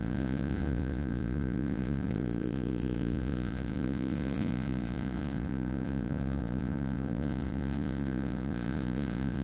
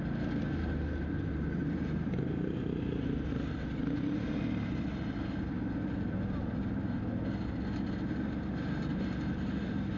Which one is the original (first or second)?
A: second